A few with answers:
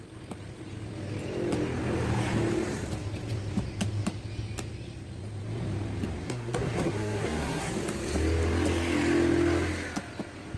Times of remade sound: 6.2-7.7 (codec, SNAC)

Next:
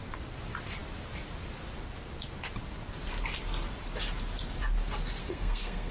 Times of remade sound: 5.2-5.9 (codec, SNAC)

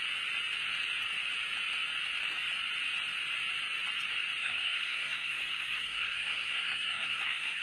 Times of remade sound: 4.4-7.6 (codec, SNAC)

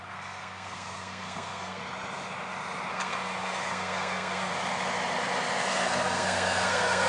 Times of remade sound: 0.0-1.8 (codec, SNAC); 2.9-4.5; 5.7-7.1